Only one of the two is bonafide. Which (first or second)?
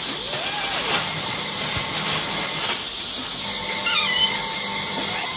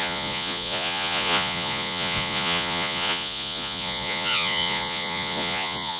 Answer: first